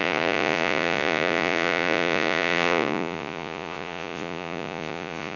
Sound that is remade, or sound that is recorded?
remade